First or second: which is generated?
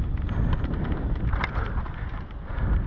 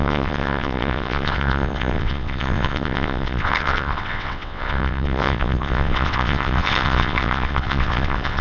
second